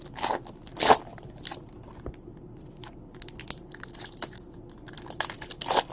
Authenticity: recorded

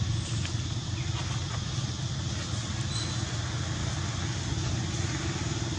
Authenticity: recorded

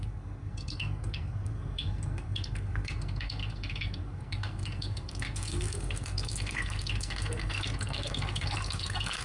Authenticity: remade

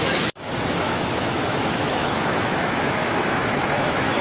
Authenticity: remade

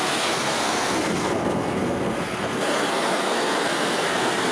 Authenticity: remade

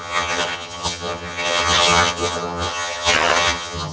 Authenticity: remade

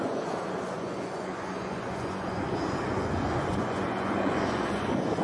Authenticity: remade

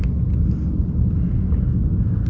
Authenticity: recorded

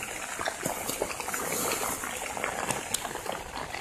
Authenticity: recorded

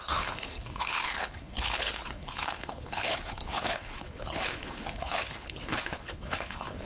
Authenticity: remade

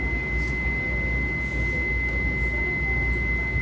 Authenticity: recorded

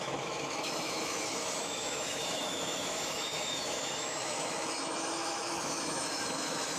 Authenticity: remade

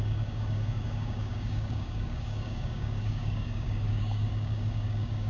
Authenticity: remade